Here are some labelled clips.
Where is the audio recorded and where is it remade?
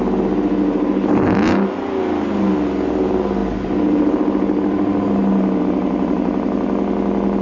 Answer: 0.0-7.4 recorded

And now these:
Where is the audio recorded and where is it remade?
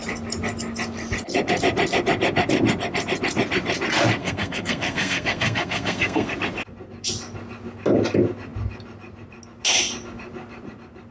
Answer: 0.0-4.2 recorded; 4.2-6.3 remade; 6.3-11.1 recorded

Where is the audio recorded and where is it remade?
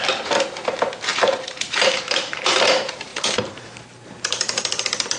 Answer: 0.0-1.1 recorded; 1.1-2.4 remade; 2.4-3.1 recorded; 3.1-5.2 remade